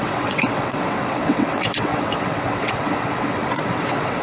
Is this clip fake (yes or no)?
yes